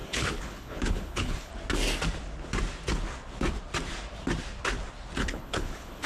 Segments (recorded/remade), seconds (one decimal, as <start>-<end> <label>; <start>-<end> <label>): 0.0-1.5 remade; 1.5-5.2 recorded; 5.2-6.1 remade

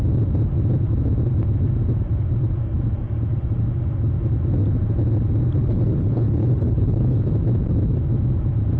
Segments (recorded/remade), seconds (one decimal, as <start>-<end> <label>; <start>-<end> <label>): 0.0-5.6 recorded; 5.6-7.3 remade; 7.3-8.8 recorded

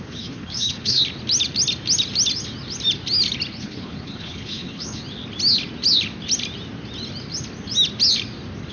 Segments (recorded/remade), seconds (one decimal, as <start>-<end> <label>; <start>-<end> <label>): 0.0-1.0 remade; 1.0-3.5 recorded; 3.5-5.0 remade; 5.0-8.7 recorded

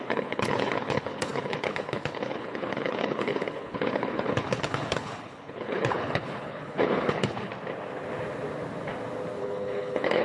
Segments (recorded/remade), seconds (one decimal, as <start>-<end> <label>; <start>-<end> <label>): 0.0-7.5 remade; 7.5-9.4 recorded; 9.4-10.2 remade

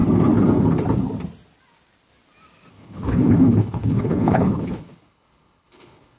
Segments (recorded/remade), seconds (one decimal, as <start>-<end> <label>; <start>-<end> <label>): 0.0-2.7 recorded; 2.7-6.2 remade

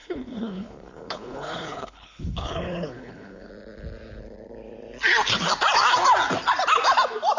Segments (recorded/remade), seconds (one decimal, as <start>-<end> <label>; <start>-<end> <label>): 0.0-3.5 remade; 3.5-7.4 recorded